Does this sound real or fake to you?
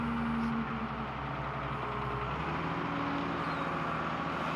real